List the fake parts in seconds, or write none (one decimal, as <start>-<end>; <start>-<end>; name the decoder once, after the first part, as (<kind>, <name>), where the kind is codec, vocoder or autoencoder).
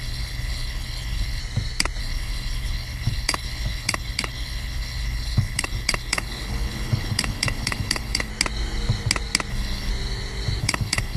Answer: 0.0-1.4 (codec, HILCodec); 2.0-8.3; 9.5-9.9; 10.6-11.2